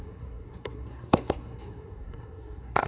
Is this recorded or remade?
remade